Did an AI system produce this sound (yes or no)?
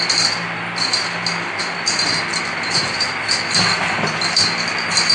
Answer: no